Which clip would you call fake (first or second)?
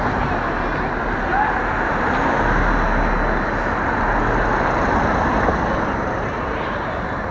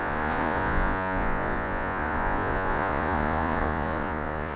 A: second